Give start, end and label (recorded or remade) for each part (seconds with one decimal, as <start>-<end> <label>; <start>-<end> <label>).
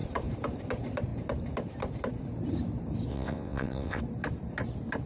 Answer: 0.0-3.1 recorded; 3.1-4.0 remade; 4.0-5.1 recorded